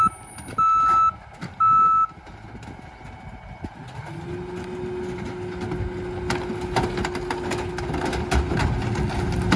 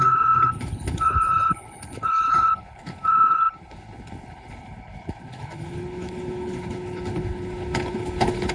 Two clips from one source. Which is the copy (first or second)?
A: second